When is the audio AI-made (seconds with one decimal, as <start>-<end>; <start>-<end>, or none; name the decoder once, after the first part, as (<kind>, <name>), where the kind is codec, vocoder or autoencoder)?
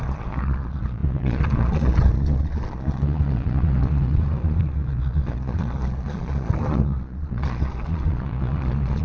0.0-9.0 (vocoder, Vocos)